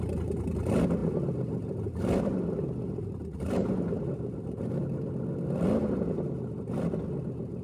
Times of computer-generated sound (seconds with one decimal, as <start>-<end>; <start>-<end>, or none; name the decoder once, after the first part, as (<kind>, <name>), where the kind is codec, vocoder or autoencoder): none